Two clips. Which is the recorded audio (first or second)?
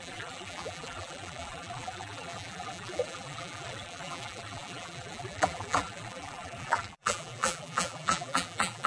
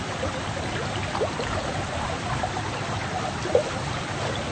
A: second